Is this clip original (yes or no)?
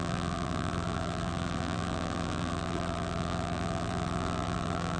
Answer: no